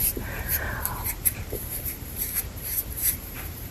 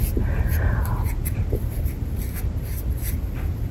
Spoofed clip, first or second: first